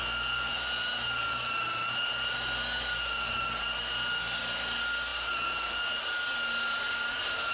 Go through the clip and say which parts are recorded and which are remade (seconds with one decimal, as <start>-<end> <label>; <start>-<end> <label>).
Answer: 0.0-7.5 recorded